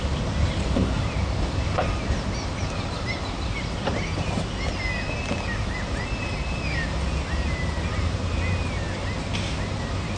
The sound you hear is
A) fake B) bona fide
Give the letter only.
B